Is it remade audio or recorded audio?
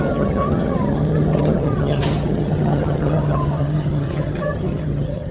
remade